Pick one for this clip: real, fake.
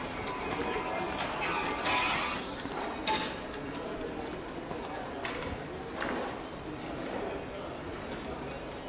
real